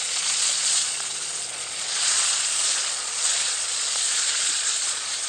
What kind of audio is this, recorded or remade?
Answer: remade